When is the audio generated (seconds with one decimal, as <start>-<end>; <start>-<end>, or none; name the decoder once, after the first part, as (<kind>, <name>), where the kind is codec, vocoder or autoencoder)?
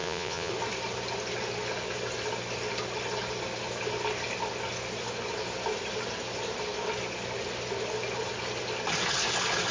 0.0-0.5 (vocoder, Vocos)